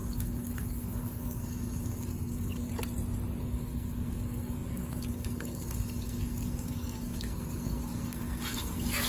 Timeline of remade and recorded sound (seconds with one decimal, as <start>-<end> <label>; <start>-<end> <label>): 0.0-2.7 remade; 2.7-3.4 recorded; 3.4-9.1 remade

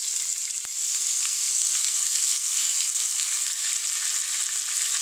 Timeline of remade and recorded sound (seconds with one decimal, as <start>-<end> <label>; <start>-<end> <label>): 0.0-0.7 recorded; 0.7-3.7 remade; 3.7-5.0 recorded

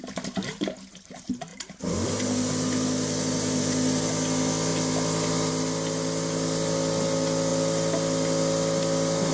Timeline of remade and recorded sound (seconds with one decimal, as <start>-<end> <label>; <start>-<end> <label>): 0.0-9.3 recorded

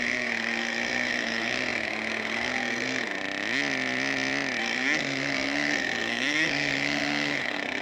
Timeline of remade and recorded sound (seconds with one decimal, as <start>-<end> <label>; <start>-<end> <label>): 0.0-3.2 remade; 3.2-4.6 recorded; 4.6-7.8 remade

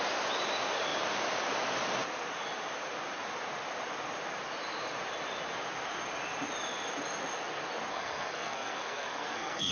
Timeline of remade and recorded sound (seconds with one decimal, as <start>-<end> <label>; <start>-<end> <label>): 0.0-7.9 recorded; 7.9-9.7 remade